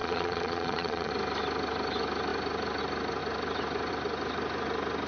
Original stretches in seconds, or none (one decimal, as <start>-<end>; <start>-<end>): 1.1-5.1

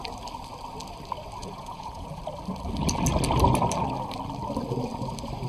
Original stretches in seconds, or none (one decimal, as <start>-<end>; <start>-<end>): 0.0-1.4; 2.2-5.5

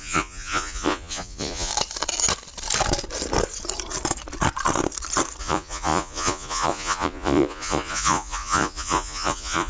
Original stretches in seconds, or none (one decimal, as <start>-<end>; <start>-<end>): 1.7-5.4

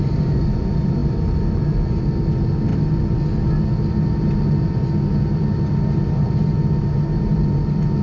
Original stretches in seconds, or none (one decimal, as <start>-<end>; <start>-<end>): 0.0-8.0

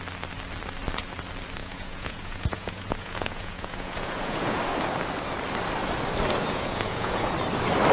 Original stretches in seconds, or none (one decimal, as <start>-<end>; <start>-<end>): 0.0-1.6; 4.6-6.4; 7.3-7.9

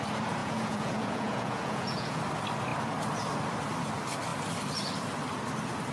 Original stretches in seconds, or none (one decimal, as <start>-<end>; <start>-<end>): 0.0-0.4; 2.2-5.9

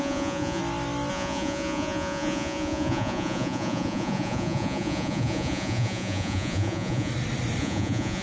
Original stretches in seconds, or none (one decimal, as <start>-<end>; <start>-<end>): 0.6-1.1; 7.1-7.6

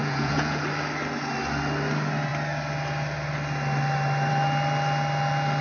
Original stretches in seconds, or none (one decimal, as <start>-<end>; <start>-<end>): 0.6-5.6